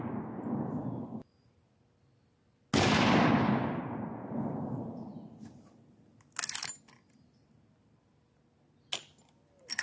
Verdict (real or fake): real